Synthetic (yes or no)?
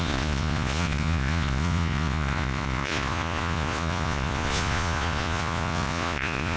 yes